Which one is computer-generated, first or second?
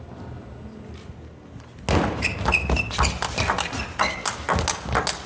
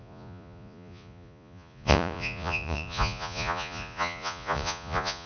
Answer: second